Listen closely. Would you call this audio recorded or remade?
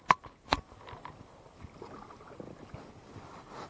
recorded